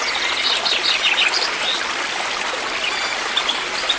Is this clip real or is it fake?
real